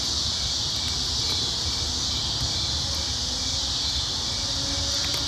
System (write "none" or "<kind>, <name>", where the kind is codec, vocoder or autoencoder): none